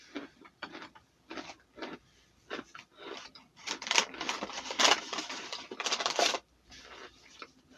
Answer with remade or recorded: remade